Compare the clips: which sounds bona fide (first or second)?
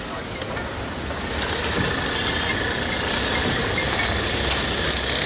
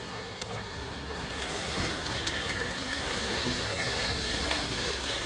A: first